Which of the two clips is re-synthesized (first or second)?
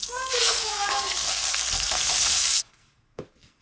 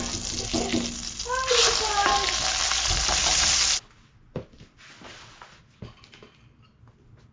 first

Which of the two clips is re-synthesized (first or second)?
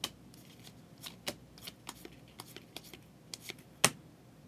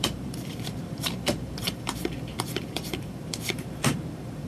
second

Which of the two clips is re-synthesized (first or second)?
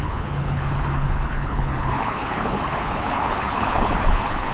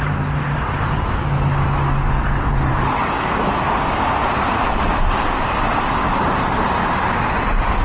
first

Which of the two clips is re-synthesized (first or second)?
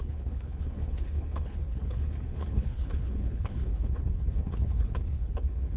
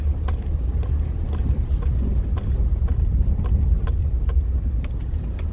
first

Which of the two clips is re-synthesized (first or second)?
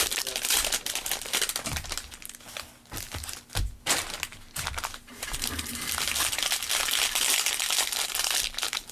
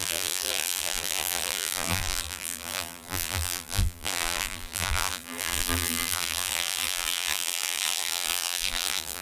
second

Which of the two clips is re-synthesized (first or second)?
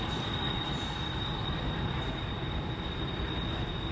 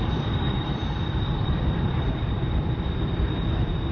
second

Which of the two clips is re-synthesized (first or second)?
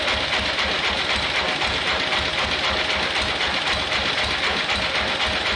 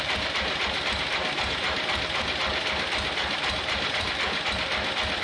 second